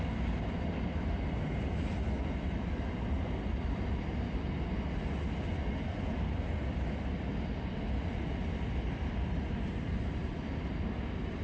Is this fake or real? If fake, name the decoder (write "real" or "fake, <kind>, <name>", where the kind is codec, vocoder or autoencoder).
real